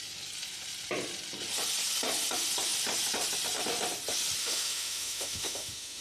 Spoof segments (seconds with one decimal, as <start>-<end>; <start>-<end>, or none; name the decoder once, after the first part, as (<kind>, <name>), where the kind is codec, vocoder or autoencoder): 4.4-6.0 (autoencoder, DAC-VAE)